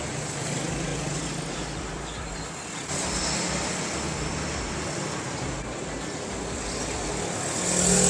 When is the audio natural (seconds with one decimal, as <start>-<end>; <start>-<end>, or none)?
0.0-8.1